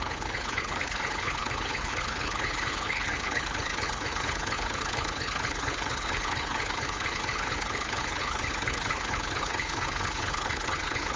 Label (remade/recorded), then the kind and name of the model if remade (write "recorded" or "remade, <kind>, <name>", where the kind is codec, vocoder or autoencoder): remade, codec, HILCodec